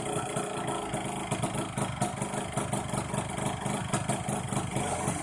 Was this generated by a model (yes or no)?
no